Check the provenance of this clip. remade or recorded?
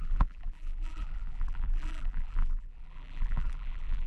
remade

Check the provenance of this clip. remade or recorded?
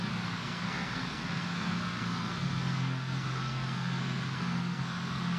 remade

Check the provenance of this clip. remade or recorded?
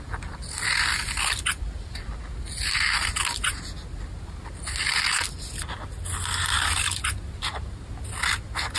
recorded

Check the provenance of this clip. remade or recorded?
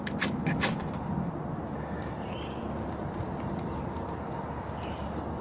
recorded